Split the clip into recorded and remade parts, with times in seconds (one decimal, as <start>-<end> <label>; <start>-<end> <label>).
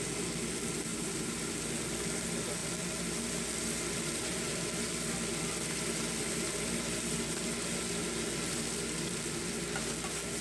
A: 0.0-0.9 recorded; 0.9-1.5 remade; 1.5-10.4 recorded